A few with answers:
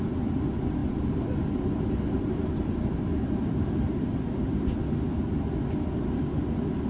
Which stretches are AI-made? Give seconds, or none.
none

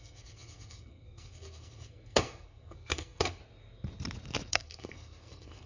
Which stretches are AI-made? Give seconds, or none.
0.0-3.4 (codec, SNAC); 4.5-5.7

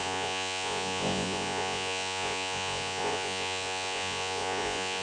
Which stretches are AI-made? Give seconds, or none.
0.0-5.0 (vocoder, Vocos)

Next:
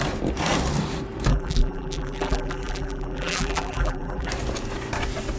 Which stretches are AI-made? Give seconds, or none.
1.3-4.3 (vocoder, BigVGAN v2)

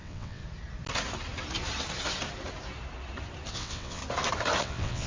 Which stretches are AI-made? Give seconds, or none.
0.0-0.4 (vocoder, WaveNeXt); 3.5-4.0; 4.6-5.1